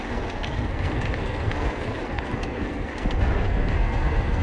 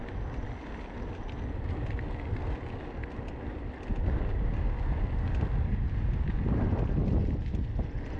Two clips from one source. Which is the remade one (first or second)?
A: first